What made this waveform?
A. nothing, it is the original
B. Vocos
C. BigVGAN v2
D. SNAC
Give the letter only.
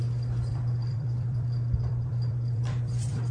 C